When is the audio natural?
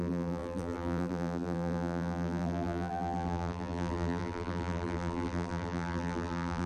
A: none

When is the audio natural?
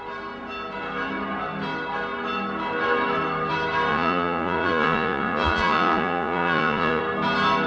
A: 0.0-3.9; 7.0-7.7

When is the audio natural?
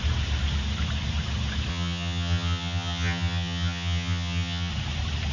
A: 0.0-1.7; 4.7-5.3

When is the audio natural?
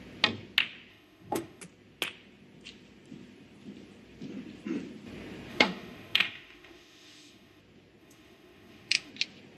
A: 0.0-0.9; 1.6-5.5; 7.6-8.0; 9.1-9.6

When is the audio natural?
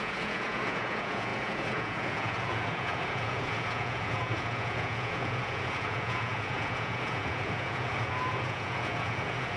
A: none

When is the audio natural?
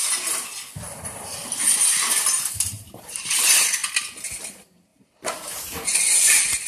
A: 0.0-2.5; 3.8-4.5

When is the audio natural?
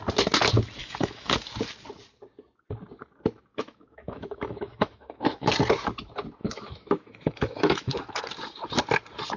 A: 0.0-0.8; 1.5-3.5; 5.5-6.4; 8.2-9.4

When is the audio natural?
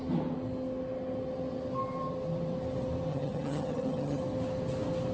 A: 0.0-3.1; 4.2-5.1